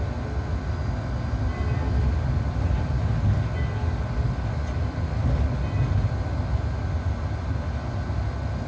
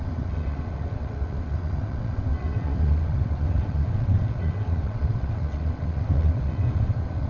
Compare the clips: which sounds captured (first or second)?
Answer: first